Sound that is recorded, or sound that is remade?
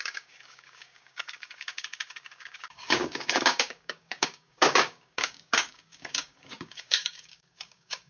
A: remade